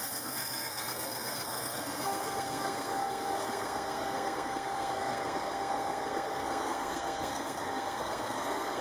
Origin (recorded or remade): remade